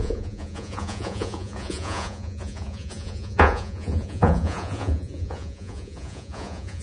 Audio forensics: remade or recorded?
remade